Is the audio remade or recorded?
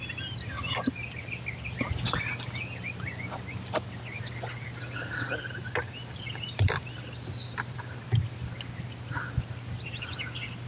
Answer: recorded